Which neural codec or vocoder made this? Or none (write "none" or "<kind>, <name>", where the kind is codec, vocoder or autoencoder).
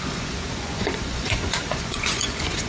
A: vocoder, Vocos